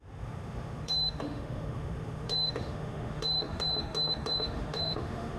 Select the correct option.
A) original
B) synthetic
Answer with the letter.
B